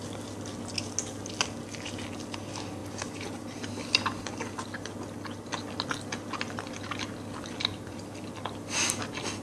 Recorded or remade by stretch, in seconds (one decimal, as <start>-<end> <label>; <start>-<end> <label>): 0.0-2.8 recorded; 2.8-3.7 remade; 3.7-9.4 recorded